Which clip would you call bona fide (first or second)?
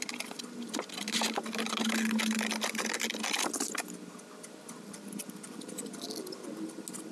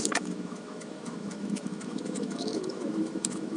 first